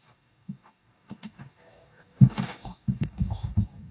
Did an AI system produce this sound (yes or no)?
yes